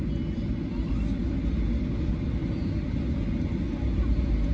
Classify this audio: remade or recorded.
recorded